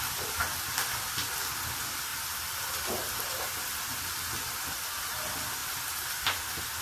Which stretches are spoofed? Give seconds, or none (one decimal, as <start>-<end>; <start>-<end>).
2.1-3.8